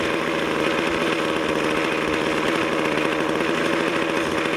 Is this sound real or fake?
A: real